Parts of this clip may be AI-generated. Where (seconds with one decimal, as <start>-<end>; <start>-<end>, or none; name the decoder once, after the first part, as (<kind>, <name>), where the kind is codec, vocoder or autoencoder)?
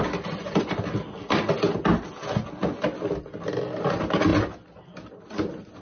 none